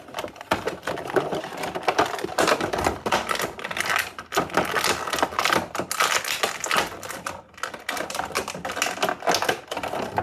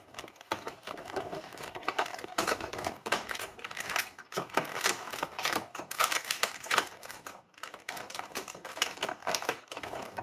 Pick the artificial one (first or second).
second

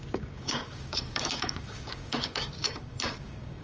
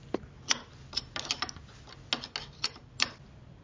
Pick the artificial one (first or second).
first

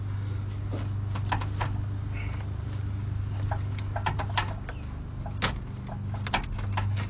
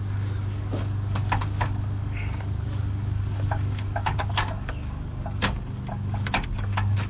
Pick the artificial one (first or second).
second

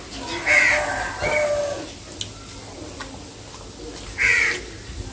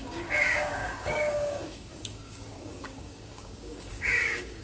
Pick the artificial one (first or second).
second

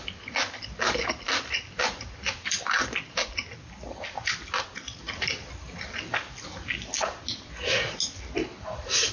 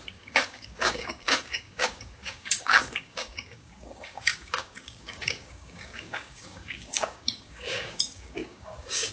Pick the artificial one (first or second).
second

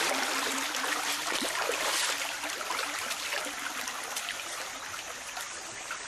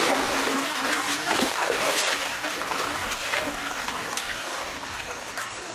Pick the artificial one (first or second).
second